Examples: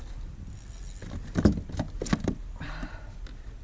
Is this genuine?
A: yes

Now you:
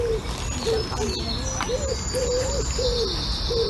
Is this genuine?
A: yes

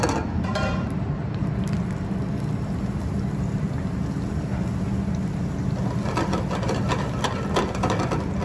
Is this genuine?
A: yes